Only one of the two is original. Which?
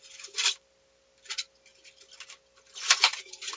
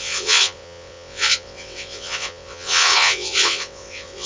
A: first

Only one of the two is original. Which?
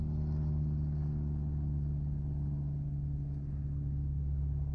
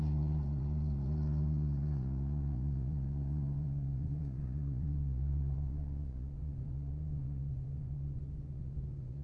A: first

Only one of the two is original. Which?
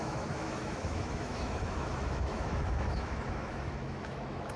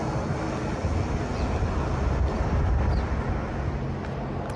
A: second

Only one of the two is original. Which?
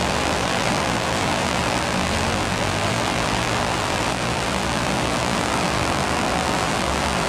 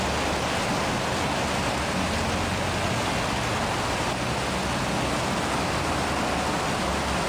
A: second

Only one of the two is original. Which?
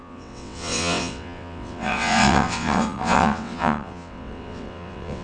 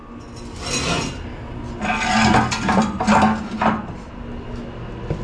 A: second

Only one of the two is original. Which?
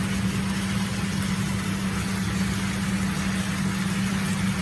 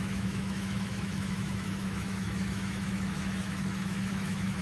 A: first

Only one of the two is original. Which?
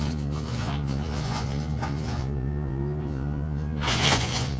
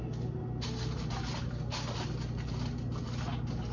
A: second